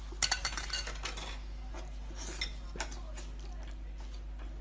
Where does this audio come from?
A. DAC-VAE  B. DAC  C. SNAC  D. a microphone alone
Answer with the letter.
D